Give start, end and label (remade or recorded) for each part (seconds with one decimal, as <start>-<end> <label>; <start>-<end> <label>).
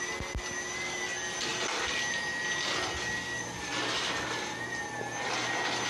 0.0-5.9 recorded